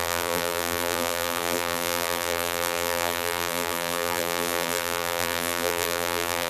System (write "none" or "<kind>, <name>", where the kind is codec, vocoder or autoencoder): vocoder, BigVGAN v2